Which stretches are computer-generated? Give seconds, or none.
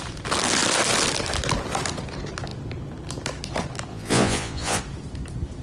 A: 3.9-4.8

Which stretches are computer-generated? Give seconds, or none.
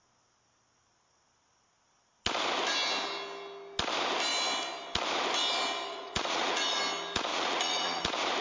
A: 5.9-6.8; 7.3-8.0